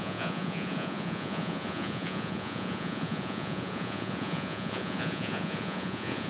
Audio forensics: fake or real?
fake